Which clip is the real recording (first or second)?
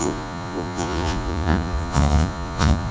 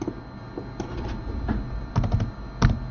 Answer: second